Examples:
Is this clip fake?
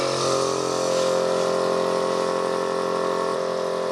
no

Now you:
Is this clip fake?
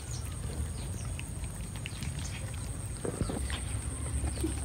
no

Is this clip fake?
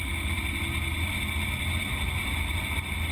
no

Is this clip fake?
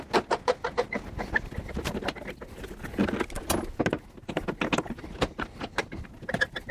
no